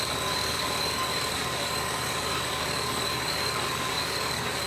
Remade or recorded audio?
remade